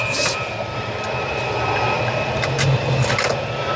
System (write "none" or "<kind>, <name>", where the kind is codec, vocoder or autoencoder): vocoder, BigVGAN v2